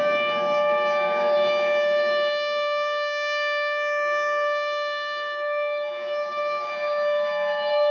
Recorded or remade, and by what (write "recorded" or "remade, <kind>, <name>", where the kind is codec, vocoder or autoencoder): remade, codec, DAC